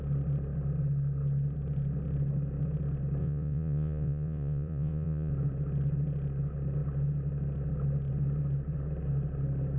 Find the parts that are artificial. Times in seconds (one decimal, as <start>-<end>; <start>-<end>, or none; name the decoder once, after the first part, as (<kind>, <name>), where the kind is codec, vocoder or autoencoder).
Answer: 3.2-5.3 (vocoder, Vocos)